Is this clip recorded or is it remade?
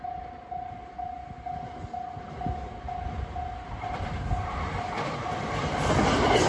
recorded